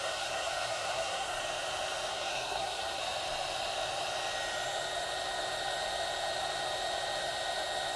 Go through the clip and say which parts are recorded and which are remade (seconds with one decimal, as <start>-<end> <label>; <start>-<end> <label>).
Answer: 0.0-1.4 remade; 1.4-2.1 recorded; 2.1-3.0 remade; 3.0-8.0 recorded